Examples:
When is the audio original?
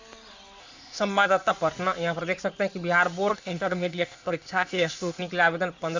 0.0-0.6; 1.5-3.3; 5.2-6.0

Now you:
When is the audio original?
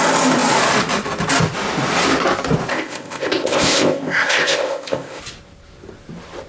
0.0-2.7; 5.2-6.5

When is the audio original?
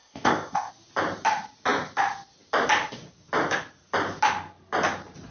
0.7-5.3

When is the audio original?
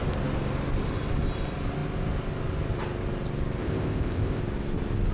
0.0-3.6; 4.4-5.1